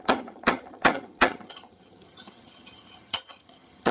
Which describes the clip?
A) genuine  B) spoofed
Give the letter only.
B